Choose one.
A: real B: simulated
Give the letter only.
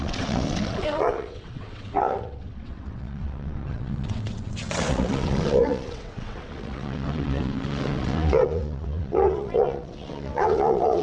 B